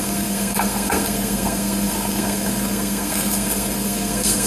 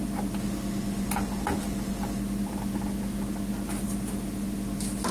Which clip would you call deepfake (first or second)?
first